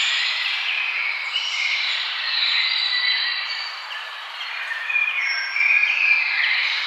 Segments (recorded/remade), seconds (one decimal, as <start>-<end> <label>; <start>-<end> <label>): 0.0-6.9 remade